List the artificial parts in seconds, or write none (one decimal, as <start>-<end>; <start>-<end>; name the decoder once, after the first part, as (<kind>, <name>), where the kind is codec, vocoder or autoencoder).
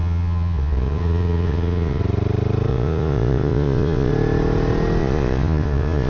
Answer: 0.0-2.0 (vocoder, Vocos); 2.7-4.1; 5.0-6.1